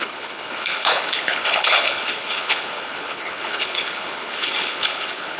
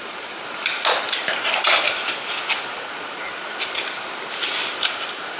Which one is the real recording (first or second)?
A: second